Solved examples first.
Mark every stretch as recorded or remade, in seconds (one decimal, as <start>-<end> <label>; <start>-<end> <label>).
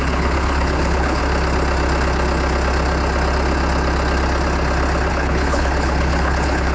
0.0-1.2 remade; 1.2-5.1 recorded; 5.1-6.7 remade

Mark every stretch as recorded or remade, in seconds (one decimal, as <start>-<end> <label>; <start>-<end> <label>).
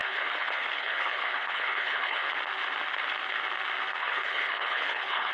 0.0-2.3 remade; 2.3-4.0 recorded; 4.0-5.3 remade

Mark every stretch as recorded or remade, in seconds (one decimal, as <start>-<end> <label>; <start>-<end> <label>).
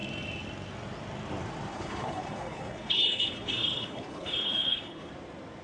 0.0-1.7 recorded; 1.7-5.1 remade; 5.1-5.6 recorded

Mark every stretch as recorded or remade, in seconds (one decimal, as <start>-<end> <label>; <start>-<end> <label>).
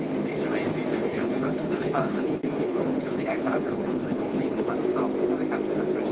0.0-1.0 recorded; 1.0-4.7 remade; 4.7-6.1 recorded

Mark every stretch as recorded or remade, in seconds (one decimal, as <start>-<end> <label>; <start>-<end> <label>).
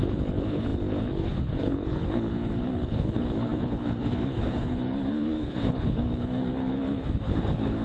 0.0-7.8 remade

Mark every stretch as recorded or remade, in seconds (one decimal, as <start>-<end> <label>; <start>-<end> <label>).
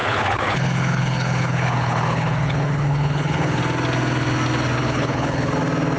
0.0-3.6 remade; 3.6-4.8 recorded; 4.8-5.5 remade; 5.5-6.0 recorded